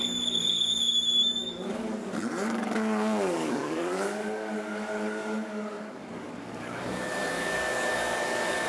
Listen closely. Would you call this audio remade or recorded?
remade